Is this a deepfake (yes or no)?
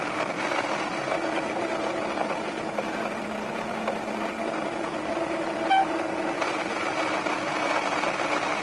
no